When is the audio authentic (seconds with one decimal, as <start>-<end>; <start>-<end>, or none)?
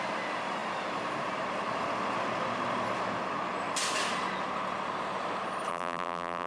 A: 0.0-5.7